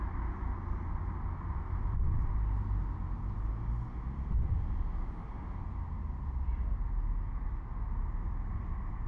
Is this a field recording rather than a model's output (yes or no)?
yes